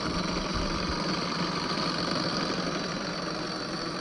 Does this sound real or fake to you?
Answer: real